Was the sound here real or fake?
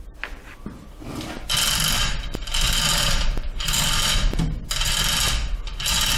real